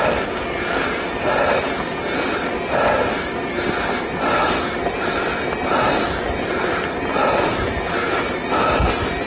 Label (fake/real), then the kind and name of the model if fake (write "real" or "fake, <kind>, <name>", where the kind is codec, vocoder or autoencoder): real